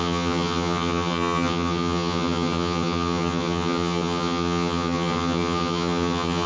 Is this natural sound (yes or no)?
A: no